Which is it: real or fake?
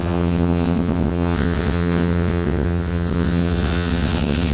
fake